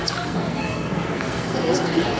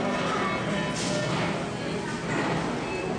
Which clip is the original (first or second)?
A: second